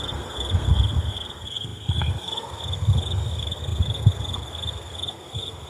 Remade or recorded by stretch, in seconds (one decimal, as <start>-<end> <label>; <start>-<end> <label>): 0.0-5.7 remade